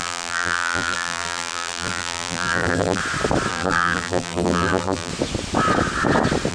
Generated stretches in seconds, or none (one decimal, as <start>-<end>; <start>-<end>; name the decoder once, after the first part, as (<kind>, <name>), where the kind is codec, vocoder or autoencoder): 0.0-3.0 (vocoder, BigVGAN v2); 3.5-5.1